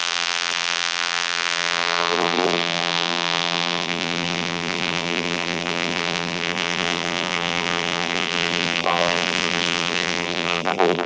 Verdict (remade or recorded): remade